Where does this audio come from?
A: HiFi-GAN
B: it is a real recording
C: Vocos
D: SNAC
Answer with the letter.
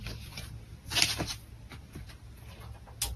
B